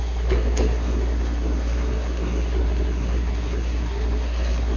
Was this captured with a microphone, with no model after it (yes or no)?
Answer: no